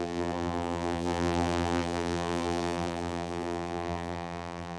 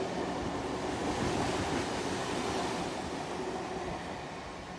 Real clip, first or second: second